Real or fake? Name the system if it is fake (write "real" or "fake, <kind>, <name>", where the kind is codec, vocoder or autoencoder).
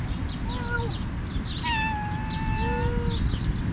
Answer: real